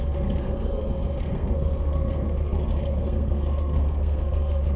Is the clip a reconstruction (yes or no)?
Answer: yes